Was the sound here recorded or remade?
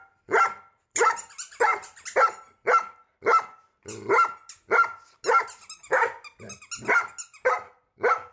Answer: recorded